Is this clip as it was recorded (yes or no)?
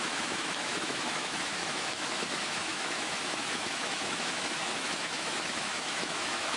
no